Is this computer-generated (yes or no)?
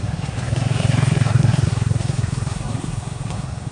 yes